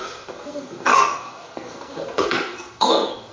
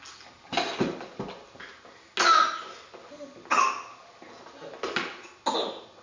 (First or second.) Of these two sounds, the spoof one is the first